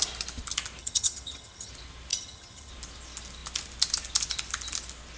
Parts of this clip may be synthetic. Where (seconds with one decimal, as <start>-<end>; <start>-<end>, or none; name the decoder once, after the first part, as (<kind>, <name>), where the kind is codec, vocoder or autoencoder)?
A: 0.8-1.7 (vocoder, HiFi-GAN); 2.1-2.7